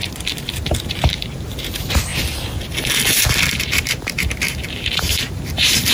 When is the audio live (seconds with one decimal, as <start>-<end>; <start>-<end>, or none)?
2.1-3.6